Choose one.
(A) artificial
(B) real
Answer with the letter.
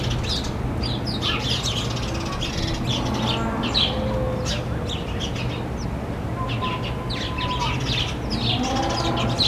B